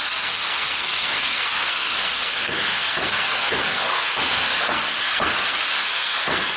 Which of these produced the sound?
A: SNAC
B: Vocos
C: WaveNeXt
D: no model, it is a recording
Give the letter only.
A